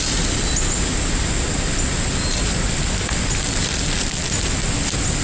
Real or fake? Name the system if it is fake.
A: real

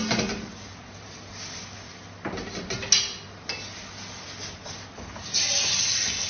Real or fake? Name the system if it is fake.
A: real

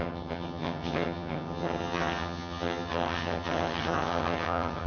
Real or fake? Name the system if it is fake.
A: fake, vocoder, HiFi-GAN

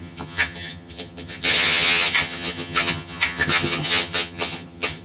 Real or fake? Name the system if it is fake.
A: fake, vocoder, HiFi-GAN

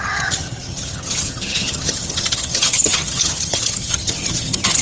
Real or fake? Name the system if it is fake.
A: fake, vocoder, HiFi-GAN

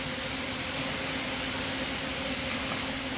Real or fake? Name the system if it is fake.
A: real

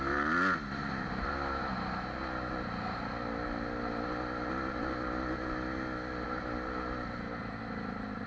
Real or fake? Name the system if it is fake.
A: real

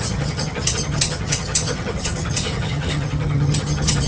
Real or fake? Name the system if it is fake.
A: fake, vocoder, HiFi-GAN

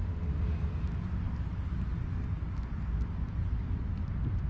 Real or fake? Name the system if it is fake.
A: real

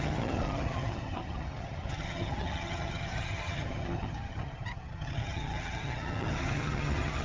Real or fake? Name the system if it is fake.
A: fake, vocoder, HiFi-GAN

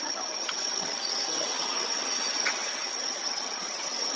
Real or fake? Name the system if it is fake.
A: fake, vocoder, HiFi-GAN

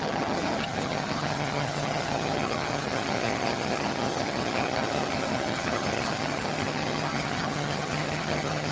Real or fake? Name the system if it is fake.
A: fake, vocoder, HiFi-GAN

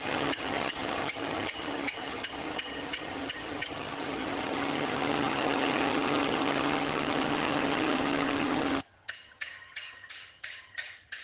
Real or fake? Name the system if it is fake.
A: fake, vocoder, HiFi-GAN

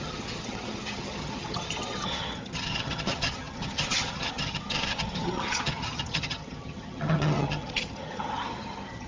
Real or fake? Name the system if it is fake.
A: fake, vocoder, HiFi-GAN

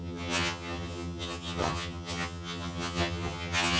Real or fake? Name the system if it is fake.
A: fake, vocoder, HiFi-GAN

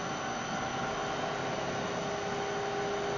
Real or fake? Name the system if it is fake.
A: real